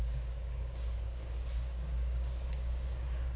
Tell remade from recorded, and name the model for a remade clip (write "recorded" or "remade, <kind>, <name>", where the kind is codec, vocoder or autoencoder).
remade, codec, DAC